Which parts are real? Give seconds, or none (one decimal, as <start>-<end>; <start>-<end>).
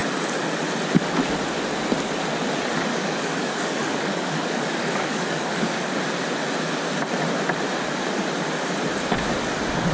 0.0-2.9; 6.0-9.9